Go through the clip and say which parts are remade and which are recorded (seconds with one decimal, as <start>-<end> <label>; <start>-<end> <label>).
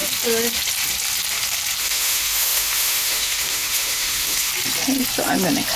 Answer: 0.0-1.8 recorded; 1.8-4.5 remade; 4.5-5.8 recorded